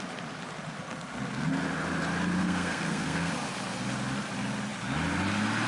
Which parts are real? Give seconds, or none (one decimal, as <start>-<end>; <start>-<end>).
0.0-2.4; 3.3-5.7